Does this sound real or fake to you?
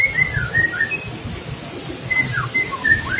real